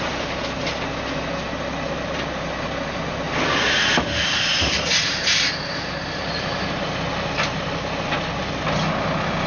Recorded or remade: recorded